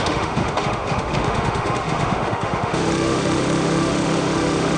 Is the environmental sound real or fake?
fake